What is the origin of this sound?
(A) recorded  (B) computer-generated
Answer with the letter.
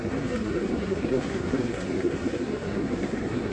B